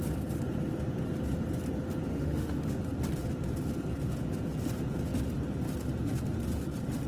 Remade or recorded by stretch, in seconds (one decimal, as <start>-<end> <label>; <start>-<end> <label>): 0.0-2.1 recorded; 2.1-2.8 remade; 2.8-7.1 recorded